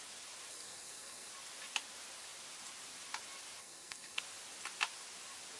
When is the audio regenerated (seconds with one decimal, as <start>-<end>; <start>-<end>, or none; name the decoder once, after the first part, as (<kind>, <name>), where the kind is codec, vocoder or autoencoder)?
0.5-1.3 (codec, SNAC); 3.6-4.2